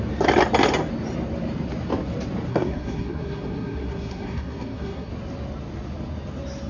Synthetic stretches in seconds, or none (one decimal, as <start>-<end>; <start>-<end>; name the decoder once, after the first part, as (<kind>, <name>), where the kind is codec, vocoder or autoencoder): 2.5-5.1 (codec, SNAC)